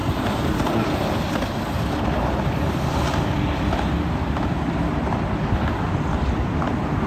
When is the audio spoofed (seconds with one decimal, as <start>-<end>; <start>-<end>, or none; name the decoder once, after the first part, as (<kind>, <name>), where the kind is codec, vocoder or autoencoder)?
0.0-0.6 (vocoder, BigVGAN v2)